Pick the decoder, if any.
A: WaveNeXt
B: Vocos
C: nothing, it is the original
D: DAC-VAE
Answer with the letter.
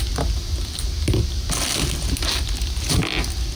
C